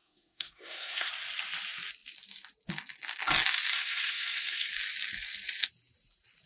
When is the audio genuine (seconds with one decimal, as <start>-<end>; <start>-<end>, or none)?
1.1-3.7; 4.7-6.5